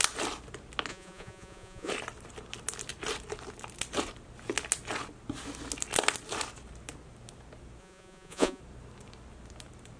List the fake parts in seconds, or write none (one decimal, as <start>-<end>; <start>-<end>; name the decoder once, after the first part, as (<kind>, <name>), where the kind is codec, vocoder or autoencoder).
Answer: 0.9-1.9 (vocoder, Vocos); 7.8-8.6